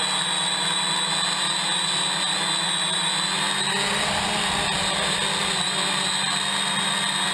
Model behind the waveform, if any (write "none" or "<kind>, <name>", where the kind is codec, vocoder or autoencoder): none